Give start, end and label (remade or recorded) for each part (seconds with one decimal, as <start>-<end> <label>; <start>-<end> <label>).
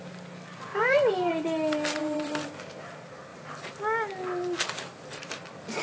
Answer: 0.0-0.7 recorded; 0.7-1.3 remade; 1.3-2.0 recorded; 2.0-2.5 remade; 2.5-3.3 recorded; 3.3-3.8 remade; 3.8-5.8 recorded